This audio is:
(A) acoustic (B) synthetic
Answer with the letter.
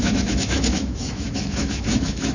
B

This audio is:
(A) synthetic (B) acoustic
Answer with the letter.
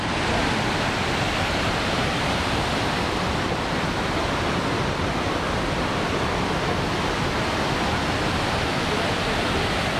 B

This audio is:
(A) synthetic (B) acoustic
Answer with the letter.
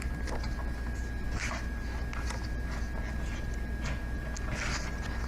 B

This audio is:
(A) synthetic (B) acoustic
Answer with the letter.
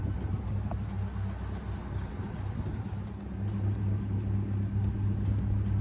B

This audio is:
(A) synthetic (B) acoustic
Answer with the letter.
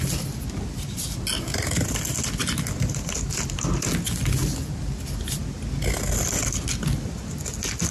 B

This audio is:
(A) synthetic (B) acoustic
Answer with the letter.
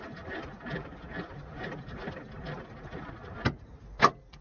B